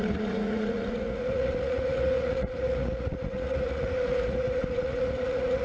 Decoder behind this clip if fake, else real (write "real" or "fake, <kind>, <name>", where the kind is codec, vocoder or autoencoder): fake, vocoder, Vocos